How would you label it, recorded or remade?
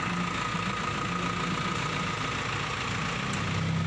recorded